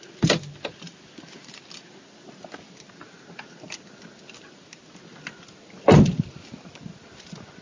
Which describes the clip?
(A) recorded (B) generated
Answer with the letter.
A